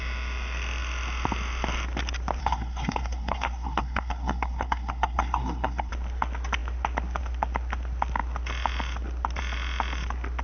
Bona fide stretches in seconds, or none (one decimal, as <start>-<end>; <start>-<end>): 0.0-2.4; 5.9-10.4